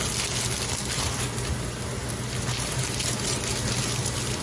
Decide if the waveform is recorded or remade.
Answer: recorded